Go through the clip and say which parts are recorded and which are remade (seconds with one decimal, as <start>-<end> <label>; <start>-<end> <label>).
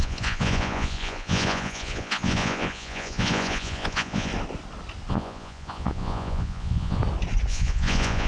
0.0-4.3 remade; 4.3-5.1 recorded; 5.1-7.0 remade; 7.0-7.5 recorded; 7.5-8.3 remade